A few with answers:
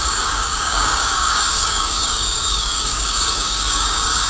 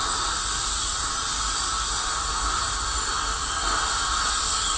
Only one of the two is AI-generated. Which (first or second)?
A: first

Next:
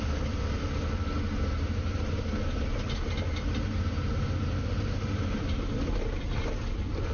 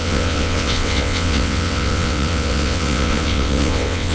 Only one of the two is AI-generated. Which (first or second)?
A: second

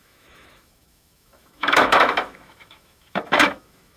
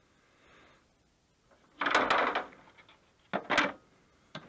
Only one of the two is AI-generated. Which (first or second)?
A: first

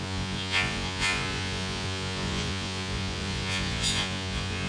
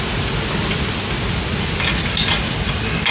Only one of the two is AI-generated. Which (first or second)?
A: first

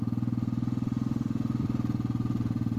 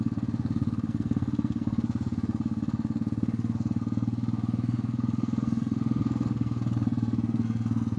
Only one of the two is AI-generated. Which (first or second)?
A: second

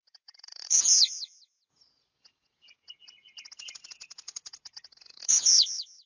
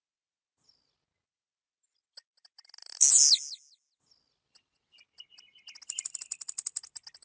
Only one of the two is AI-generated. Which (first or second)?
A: first